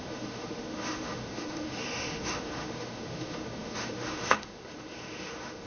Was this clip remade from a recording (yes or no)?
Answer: yes